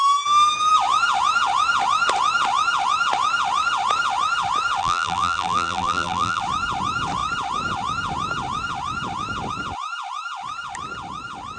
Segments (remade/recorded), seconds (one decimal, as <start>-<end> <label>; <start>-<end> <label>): 0.0-4.8 recorded; 4.8-6.4 remade; 6.4-11.6 recorded